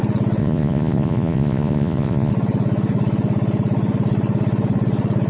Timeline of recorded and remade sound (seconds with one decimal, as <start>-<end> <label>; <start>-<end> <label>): 0.0-0.4 recorded; 0.4-2.3 remade; 2.3-5.3 recorded